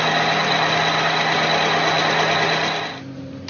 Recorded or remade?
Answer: recorded